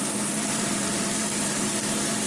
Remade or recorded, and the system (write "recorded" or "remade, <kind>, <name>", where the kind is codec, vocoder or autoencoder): remade, vocoder, BigVGAN v2